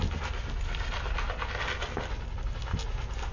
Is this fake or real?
real